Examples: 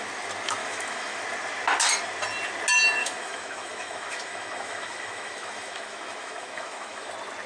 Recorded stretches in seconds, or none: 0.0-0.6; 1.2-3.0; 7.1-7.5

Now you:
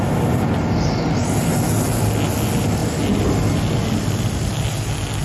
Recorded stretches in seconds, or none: 0.0-5.2